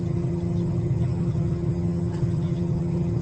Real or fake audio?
fake